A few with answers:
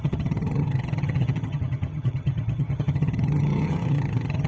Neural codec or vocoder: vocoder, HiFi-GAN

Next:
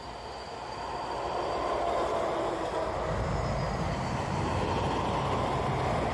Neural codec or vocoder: none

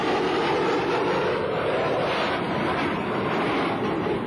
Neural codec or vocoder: none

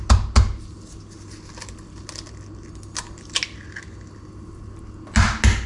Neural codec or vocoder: none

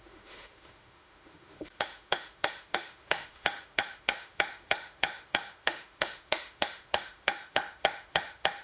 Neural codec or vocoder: autoencoder, DAC-VAE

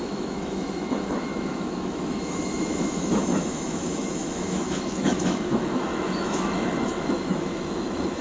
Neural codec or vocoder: autoencoder, DAC-VAE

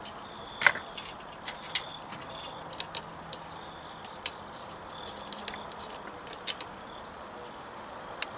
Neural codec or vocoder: none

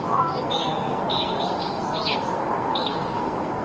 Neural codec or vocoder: codec, SNAC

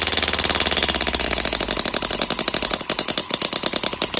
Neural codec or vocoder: none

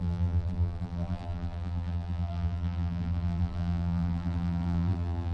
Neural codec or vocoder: vocoder, BigVGAN v2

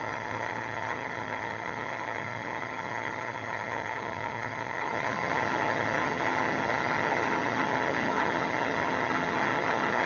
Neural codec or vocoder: vocoder, HiFi-GAN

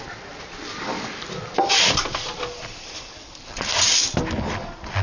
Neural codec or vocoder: none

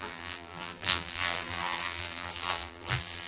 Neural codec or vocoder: vocoder, BigVGAN v2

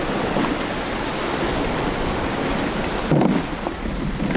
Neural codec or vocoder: none